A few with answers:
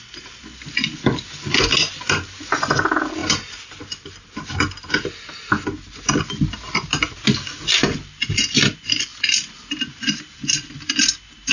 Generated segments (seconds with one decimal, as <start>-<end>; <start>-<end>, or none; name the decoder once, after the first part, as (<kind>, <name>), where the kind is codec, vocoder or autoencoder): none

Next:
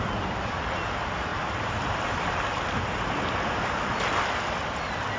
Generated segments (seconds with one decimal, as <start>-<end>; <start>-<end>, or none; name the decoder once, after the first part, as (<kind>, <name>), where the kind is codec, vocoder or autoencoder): none

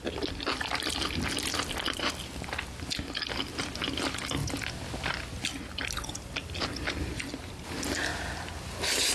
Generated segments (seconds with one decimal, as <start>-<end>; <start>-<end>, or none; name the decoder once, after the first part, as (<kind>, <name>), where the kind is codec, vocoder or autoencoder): none